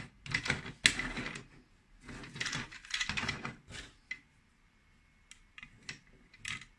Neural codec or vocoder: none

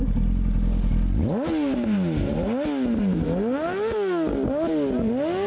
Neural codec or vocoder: none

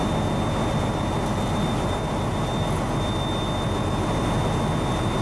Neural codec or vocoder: none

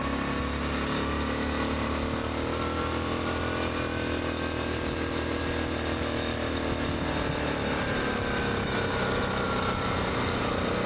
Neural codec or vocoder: none